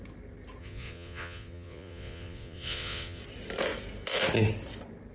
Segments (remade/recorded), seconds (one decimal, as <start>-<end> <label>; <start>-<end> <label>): 0.0-0.6 recorded; 0.6-3.2 remade; 3.2-5.1 recorded